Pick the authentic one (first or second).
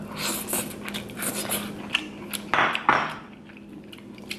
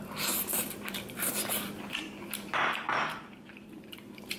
first